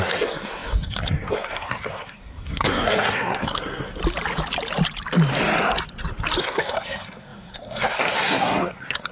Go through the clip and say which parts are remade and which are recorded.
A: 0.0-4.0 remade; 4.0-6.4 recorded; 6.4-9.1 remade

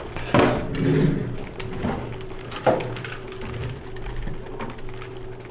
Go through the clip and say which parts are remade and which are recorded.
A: 0.0-5.5 recorded

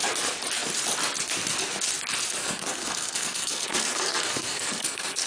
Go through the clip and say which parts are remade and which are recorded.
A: 0.0-2.4 recorded; 2.4-5.3 remade